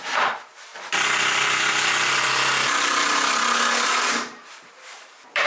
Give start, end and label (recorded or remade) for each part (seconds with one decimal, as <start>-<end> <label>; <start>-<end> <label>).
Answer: 0.0-0.7 remade; 0.7-4.0 recorded; 4.0-5.5 remade